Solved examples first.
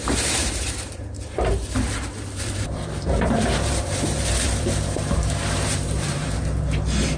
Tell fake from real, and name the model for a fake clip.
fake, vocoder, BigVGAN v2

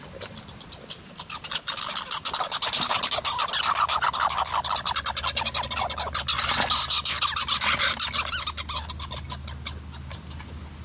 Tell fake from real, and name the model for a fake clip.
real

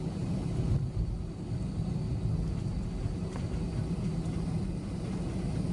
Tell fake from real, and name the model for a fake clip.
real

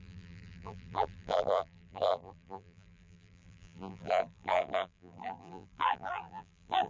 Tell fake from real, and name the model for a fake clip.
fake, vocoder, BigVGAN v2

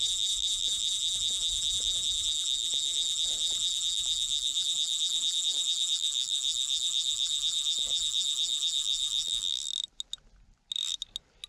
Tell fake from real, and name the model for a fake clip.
real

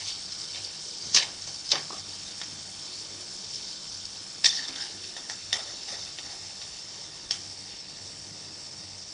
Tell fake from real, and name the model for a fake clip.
fake, codec, HILCodec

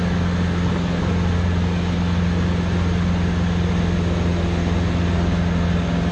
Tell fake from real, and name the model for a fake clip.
real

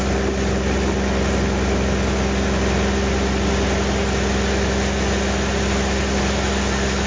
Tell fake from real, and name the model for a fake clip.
real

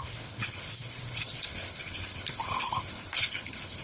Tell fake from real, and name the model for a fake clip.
fake, codec, HILCodec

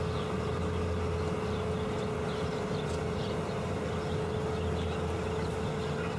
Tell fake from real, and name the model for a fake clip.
real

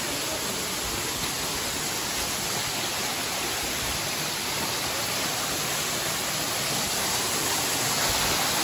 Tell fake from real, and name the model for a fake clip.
real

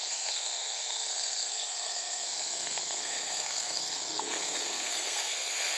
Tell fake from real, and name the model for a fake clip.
fake, codec, SNAC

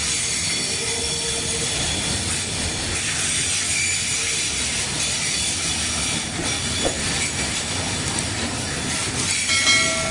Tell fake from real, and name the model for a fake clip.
real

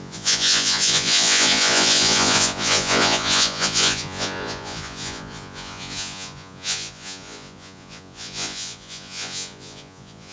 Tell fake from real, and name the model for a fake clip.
fake, vocoder, Vocos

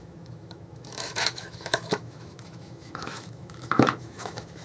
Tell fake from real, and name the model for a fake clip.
fake, autoencoder, DAC-VAE